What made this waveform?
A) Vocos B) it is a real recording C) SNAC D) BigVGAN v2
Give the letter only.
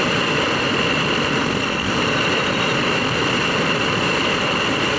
B